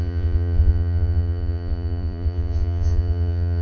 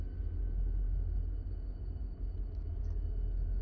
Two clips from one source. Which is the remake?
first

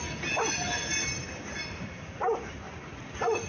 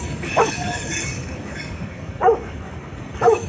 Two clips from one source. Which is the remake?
second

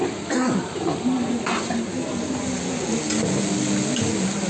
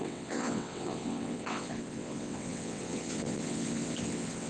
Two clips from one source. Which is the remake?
second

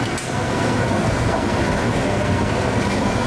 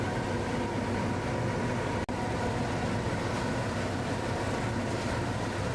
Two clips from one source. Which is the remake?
first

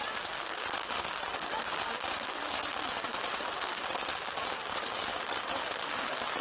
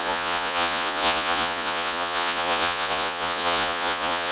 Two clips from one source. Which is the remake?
second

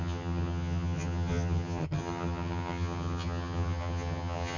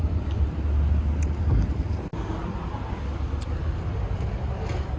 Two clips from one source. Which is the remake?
first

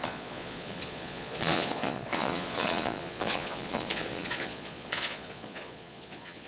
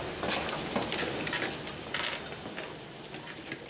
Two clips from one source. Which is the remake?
first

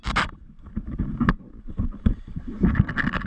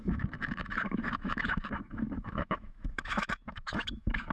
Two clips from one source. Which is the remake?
second